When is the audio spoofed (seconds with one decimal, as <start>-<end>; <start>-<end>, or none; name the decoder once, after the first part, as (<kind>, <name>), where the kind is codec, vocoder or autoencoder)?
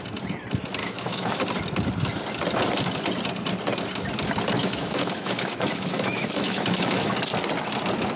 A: 0.8-1.4 (autoencoder, DAC-VAE); 4.6-7.1